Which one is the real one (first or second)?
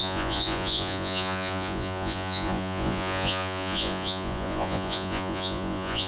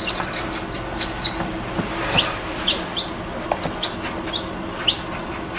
second